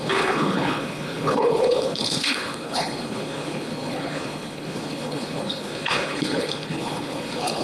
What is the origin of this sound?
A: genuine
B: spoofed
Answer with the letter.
B